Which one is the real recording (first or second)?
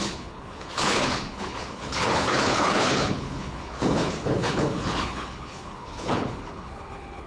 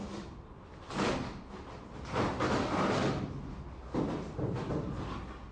second